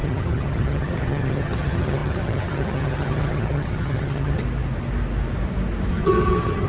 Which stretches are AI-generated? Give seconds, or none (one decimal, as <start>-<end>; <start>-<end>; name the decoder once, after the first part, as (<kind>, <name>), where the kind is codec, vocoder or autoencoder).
0.0-4.4 (vocoder, HiFi-GAN); 5.9-6.7